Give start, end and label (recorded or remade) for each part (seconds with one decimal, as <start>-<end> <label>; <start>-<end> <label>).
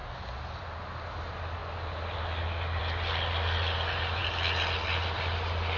0.0-5.8 recorded